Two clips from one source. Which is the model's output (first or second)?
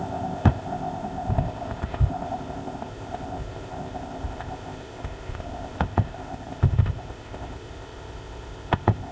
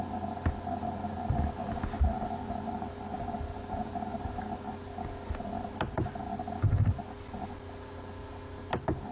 first